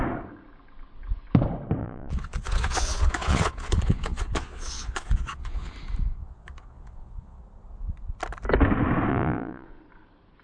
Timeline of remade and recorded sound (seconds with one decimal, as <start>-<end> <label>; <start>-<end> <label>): 0.0-1.8 recorded; 1.8-5.7 remade; 5.7-6.2 recorded; 6.2-7.4 remade; 7.4-9.1 recorded; 9.1-9.8 remade; 9.8-10.4 recorded